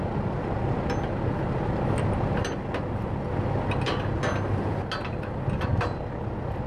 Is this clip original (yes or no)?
yes